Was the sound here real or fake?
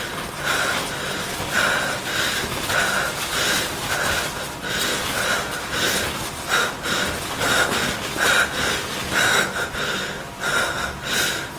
real